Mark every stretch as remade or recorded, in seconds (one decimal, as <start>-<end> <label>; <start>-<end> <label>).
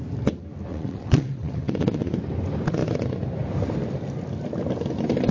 0.0-0.7 recorded; 0.7-2.1 remade; 2.1-5.3 recorded